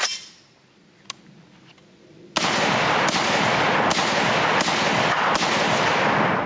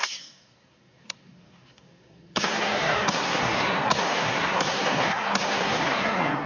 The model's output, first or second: second